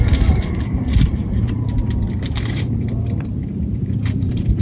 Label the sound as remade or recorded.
remade